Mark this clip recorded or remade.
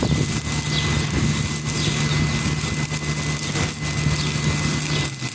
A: recorded